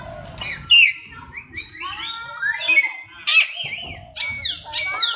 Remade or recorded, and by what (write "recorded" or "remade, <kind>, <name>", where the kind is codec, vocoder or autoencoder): recorded